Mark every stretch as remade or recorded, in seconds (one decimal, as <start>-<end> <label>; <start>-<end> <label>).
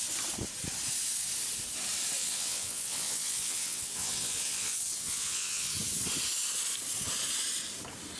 0.0-2.2 recorded; 2.2-5.7 remade; 5.7-8.2 recorded